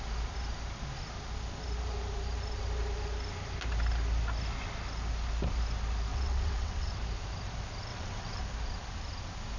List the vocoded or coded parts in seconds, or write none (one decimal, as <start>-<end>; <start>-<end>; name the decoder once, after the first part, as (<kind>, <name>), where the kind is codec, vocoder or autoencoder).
6.1-6.9 (vocoder, WaveNeXt); 7.9-8.4